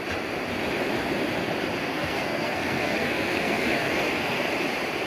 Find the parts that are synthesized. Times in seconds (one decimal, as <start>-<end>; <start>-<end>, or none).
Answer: 1.8-4.5